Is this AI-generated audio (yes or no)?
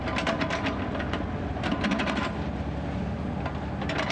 no